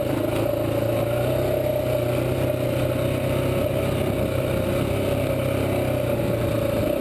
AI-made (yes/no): no